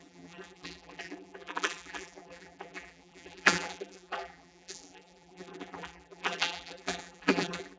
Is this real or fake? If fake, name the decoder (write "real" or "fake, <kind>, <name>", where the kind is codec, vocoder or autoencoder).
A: fake, vocoder, BigVGAN v2